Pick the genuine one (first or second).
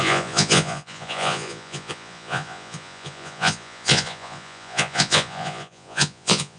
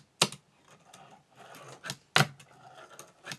second